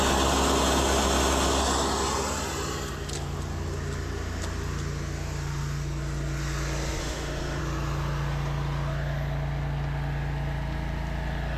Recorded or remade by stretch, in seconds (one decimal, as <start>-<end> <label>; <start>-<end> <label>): 0.0-7.0 recorded; 7.0-7.6 remade; 7.6-11.6 recorded